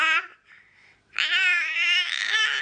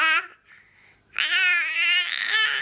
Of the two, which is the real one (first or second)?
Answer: second